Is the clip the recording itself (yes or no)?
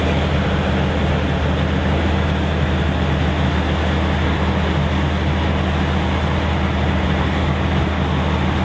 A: yes